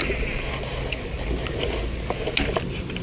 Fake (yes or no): no